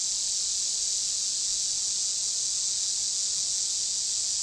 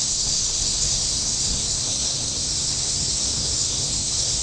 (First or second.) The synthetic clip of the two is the second